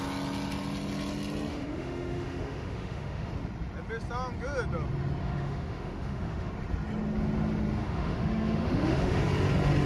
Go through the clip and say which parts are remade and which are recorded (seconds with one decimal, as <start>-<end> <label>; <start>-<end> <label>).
0.0-1.5 recorded; 1.5-3.3 remade; 3.3-5.2 recorded; 5.2-6.5 remade; 6.5-7.8 recorded; 7.8-9.2 remade; 9.2-9.9 recorded